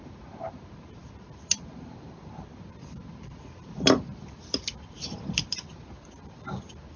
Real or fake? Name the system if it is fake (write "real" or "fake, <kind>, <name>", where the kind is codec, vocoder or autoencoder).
fake, vocoder, BigVGAN v2